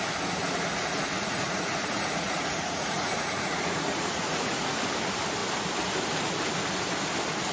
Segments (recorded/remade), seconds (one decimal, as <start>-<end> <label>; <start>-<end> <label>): 0.0-0.4 recorded; 0.4-4.9 remade; 4.9-7.5 recorded